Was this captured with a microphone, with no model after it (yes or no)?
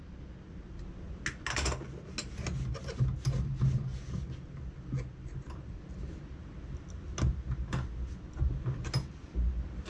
yes